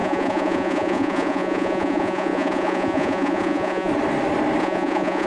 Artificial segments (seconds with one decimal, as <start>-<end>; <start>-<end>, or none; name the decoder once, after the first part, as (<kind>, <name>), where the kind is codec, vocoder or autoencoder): 0.0-3.9 (vocoder, Vocos); 4.6-5.3